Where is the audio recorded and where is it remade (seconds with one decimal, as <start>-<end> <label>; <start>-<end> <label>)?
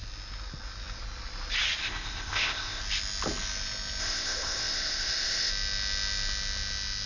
0.0-1.8 recorded; 1.8-2.8 remade; 2.8-4.0 recorded; 4.0-5.5 remade; 5.5-7.1 recorded